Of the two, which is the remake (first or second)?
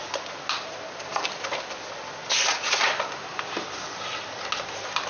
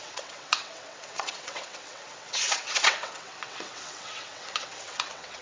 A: second